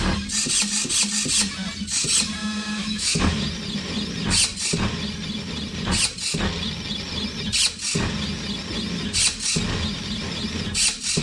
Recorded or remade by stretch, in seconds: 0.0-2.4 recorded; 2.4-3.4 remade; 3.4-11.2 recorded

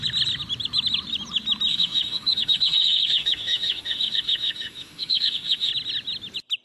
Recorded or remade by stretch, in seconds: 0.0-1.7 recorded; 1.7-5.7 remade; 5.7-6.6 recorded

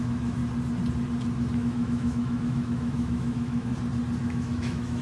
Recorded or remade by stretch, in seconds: 0.0-0.4 remade; 0.4-1.6 recorded; 1.6-3.7 remade; 3.7-4.2 recorded; 4.2-5.0 remade

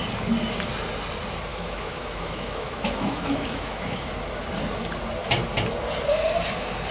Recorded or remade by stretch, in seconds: 0.0-1.5 recorded; 1.5-4.1 remade; 4.1-6.9 recorded

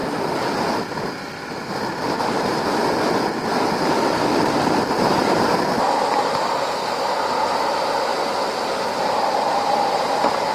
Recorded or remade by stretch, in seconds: 0.0-10.5 recorded